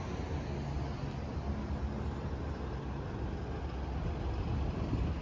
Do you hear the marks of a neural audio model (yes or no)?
no